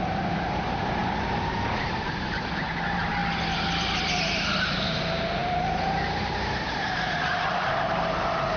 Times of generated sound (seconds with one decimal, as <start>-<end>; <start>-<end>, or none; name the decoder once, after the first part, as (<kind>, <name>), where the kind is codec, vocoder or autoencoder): 0.0-1.0 (vocoder, BigVGAN v2); 1.7-3.2; 4.1-8.6